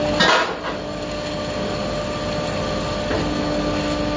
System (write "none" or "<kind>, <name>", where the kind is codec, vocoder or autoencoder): none